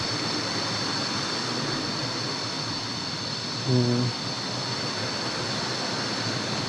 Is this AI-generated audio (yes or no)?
no